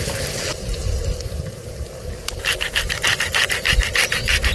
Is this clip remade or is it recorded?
recorded